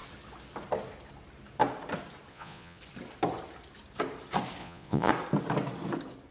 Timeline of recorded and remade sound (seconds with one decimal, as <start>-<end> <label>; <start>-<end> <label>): 0.0-2.3 recorded; 2.3-2.8 remade; 2.8-4.6 recorded; 4.6-5.1 remade; 5.1-6.3 recorded